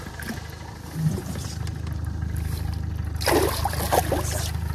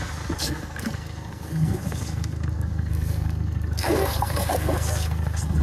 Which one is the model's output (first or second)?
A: second